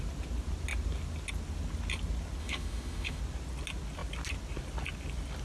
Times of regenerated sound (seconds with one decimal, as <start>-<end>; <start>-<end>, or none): 2.4-3.2